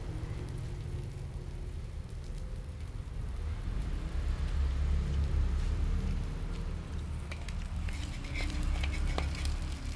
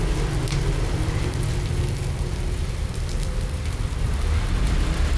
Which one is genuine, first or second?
first